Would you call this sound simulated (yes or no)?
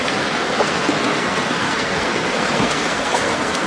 yes